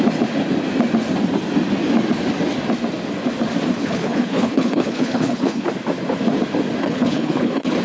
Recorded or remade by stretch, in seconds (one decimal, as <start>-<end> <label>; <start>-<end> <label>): 0.0-3.8 recorded; 3.8-5.7 remade; 5.7-6.8 recorded; 6.8-7.8 remade